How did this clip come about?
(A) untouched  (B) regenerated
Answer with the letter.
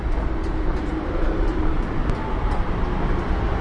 A